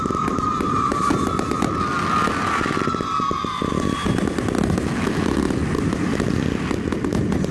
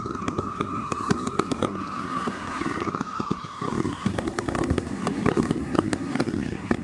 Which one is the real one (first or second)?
first